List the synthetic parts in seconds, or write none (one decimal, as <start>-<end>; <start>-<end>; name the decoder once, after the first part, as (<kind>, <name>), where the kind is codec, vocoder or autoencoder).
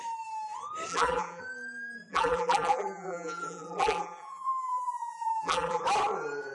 0.9-1.4 (vocoder, BigVGAN v2); 2.1-5.8